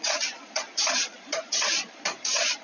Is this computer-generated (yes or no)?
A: yes